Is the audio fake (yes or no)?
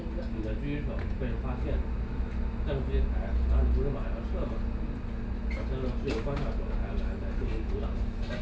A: no